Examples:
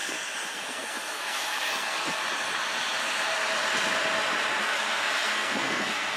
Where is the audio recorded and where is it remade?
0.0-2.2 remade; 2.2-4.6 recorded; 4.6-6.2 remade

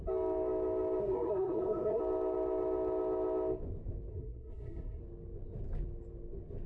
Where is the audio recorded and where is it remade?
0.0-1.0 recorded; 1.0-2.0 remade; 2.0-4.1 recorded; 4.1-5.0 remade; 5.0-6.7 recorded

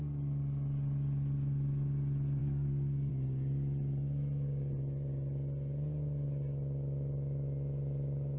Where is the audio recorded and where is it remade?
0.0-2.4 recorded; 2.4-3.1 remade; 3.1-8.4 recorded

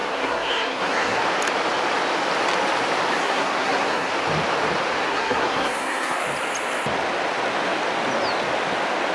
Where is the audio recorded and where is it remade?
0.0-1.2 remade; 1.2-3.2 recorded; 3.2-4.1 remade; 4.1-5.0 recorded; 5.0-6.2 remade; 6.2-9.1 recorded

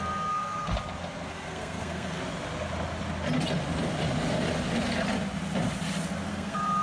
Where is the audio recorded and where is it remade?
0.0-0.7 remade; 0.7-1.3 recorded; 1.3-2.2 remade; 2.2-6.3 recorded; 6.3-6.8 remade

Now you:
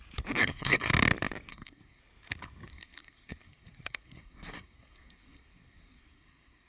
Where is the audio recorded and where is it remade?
0.0-0.4 recorded; 0.4-0.9 remade; 0.9-1.5 recorded; 1.5-2.0 remade; 2.0-2.7 recorded; 2.7-6.7 remade